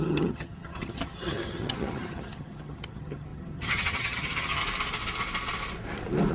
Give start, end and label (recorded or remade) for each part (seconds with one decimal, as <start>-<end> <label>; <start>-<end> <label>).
0.0-4.6 remade; 4.6-6.3 recorded